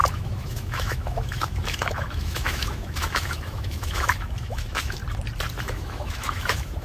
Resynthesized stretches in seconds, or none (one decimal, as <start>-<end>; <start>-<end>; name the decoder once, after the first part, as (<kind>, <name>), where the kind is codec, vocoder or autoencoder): 0.0-5.0 (autoencoder, DAC-VAE); 5.6-6.8